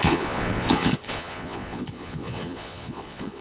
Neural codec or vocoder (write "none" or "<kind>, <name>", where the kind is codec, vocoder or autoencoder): vocoder, Vocos